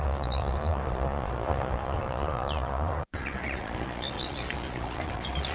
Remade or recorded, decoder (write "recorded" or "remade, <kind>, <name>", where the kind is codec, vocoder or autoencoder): remade, vocoder, Vocos